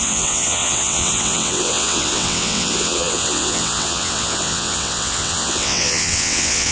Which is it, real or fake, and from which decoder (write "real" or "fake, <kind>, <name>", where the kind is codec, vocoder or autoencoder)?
fake, vocoder, WaveNeXt